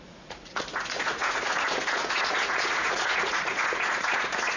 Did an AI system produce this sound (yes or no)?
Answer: yes